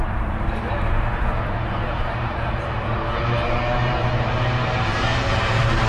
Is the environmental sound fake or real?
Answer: fake